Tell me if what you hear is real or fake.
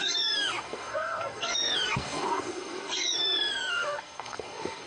fake